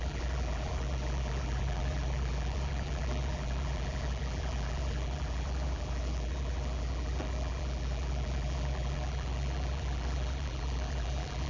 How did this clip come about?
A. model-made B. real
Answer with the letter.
A